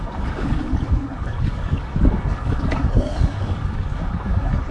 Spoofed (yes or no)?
yes